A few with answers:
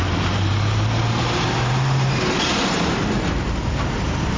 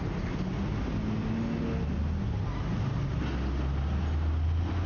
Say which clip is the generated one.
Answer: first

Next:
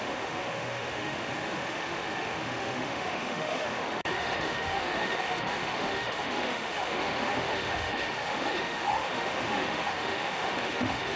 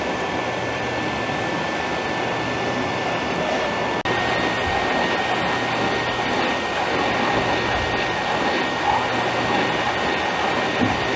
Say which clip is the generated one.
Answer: first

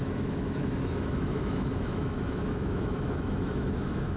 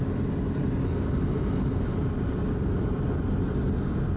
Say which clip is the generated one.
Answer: first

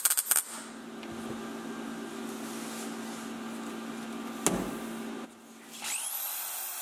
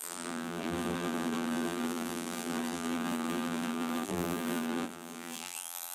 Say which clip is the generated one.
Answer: second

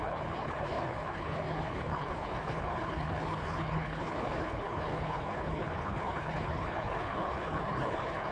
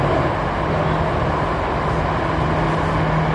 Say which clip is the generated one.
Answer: first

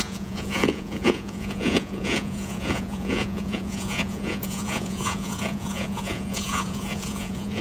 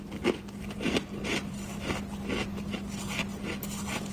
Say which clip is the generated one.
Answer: first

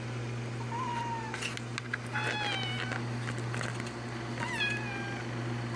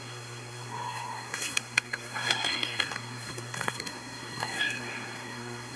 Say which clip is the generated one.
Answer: second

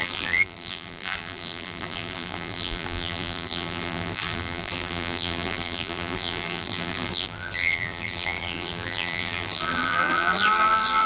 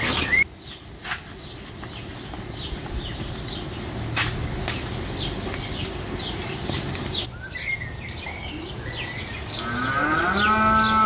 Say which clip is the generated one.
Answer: first